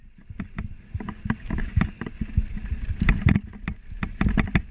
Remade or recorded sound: recorded